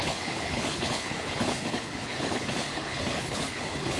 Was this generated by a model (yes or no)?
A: yes